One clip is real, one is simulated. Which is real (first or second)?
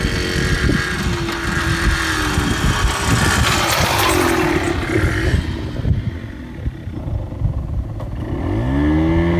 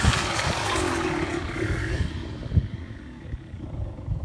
first